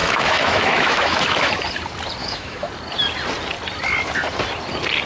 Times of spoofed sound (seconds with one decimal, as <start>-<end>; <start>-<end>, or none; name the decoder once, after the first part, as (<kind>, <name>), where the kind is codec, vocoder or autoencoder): 0.0-1.5 (autoencoder, DAC-VAE); 2.2-2.7

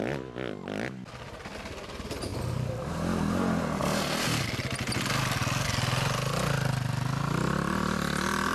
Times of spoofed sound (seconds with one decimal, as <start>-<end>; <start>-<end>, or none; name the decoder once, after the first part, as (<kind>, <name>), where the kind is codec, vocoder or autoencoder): none

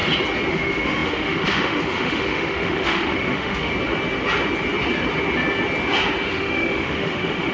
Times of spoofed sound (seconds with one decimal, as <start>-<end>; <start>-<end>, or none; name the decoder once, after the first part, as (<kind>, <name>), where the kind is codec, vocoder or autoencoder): 0.5-3.7 (autoencoder, DAC-VAE); 6.3-7.5